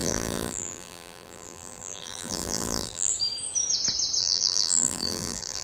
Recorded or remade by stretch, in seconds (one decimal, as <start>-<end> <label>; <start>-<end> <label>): 0.0-3.1 remade; 3.1-4.2 recorded; 4.2-5.6 remade